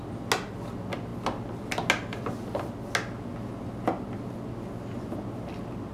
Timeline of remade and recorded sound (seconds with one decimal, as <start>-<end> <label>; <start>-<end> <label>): 0.0-5.9 recorded